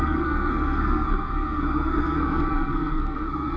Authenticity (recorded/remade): remade